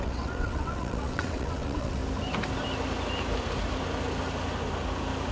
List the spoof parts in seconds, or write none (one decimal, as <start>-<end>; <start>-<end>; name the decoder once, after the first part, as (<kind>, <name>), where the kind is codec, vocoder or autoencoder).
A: 0.0-2.0 (vocoder, WaveNeXt)

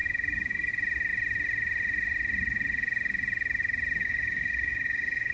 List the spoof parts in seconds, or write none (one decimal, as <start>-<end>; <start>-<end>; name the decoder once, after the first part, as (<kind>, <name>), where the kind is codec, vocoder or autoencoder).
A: 0.0-0.7 (codec, DAC); 4.0-5.3

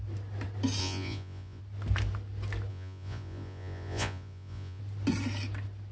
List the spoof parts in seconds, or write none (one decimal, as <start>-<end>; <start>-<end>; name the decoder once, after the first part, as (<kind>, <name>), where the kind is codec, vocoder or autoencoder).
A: 0.8-1.6 (vocoder, Vocos); 2.7-4.8

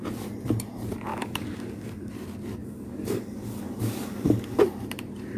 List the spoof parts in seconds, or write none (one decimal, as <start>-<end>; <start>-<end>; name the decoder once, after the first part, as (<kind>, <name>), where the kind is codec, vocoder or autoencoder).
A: 1.1-2.1 (codec, DAC); 2.6-4.6

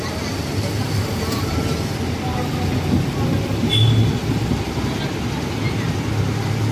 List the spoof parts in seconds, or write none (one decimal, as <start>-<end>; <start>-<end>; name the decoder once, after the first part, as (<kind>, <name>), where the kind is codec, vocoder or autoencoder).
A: none

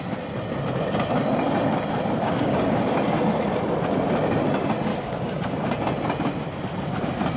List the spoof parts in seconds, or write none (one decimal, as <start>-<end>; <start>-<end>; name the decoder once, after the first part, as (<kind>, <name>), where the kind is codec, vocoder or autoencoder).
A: 2.2-2.8 (codec, DAC); 4.9-5.5

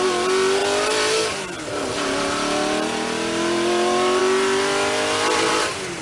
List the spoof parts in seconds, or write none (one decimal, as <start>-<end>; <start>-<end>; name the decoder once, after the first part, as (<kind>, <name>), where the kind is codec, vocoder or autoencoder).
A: none